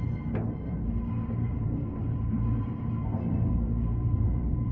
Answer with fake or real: fake